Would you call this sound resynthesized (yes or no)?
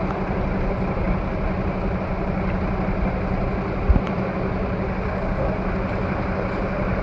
no